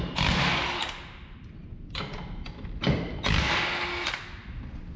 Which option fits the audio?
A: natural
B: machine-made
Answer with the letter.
A